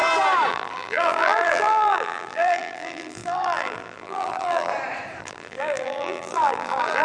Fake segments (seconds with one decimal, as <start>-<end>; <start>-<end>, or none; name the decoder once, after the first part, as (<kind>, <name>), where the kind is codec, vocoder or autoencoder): 0.5-4.7 (vocoder, BigVGAN v2); 5.2-7.0